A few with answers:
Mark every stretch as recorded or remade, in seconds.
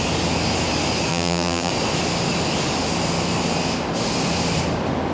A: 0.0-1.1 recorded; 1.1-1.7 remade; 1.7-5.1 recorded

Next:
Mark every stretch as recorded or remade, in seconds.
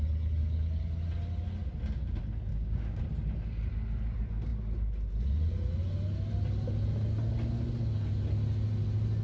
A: 0.0-2.5 recorded; 2.5-3.0 remade; 3.0-9.2 recorded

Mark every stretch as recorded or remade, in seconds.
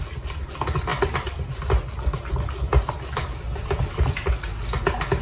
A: 0.0-5.2 recorded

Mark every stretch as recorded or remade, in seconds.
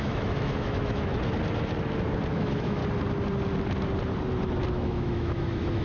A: 0.0-1.1 remade; 1.1-2.3 recorded; 2.3-2.8 remade; 2.8-4.7 recorded; 4.7-5.8 remade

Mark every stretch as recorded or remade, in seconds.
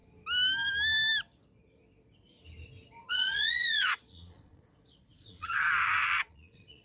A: 0.0-3.1 recorded; 3.1-6.8 remade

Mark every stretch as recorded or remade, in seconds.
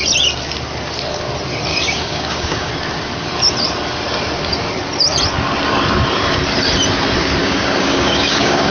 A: 0.0-1.7 recorded; 1.7-2.7 remade; 2.7-7.4 recorded; 7.4-8.7 remade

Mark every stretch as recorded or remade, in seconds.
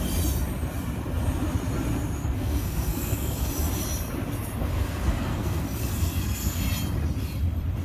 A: 0.0-2.2 recorded; 2.2-3.5 remade; 3.5-4.6 recorded; 4.6-6.6 remade; 6.6-7.8 recorded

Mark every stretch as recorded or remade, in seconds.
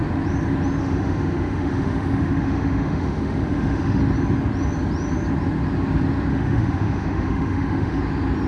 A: 0.0-0.8 recorded; 0.8-4.0 remade; 4.0-6.3 recorded; 6.3-8.0 remade; 8.0-8.5 recorded